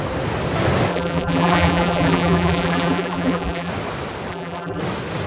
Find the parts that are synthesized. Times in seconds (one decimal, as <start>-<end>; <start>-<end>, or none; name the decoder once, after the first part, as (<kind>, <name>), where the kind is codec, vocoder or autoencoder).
0.9-3.7 (vocoder, BigVGAN v2); 4.3-4.8